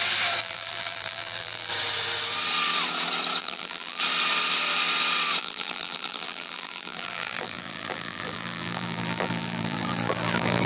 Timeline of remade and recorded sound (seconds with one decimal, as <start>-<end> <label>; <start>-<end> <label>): 0.0-0.4 recorded; 0.4-1.7 remade; 1.7-3.4 recorded; 3.4-4.0 remade; 4.0-5.4 recorded; 5.4-10.7 remade

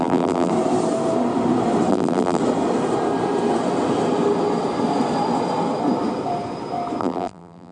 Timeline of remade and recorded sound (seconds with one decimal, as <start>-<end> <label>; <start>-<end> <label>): 0.0-0.5 remade; 0.5-1.9 recorded; 1.9-2.4 remade; 2.4-7.0 recorded; 7.0-7.7 remade

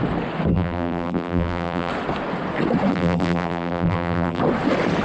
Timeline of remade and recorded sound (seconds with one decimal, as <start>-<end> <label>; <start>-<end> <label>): 0.0-0.5 recorded; 0.5-1.9 remade; 1.9-2.9 recorded; 2.9-4.4 remade; 4.4-5.0 recorded

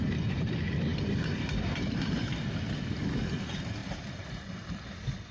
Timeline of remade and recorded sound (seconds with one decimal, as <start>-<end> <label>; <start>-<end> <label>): 0.0-0.9 recorded; 0.9-2.7 remade; 2.7-3.8 recorded; 3.8-4.8 remade; 4.8-5.3 recorded

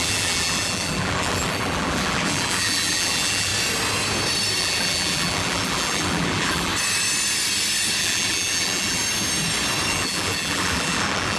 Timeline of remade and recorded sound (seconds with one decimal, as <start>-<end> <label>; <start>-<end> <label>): 0.0-3.5 remade; 3.5-4.6 recorded; 4.6-6.7 remade; 6.7-8.0 recorded; 8.0-9.0 remade; 9.0-9.9 recorded; 9.9-11.4 remade

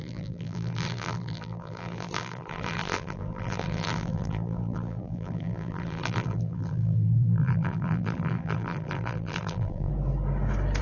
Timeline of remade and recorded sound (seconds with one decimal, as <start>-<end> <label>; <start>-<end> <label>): 0.0-9.9 remade; 9.9-10.8 recorded

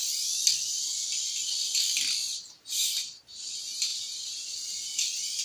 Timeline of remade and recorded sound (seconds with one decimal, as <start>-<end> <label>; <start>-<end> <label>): 0.0-3.2 remade; 3.2-5.4 recorded